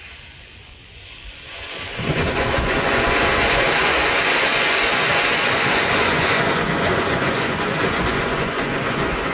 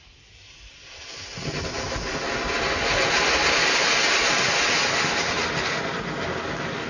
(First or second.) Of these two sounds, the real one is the second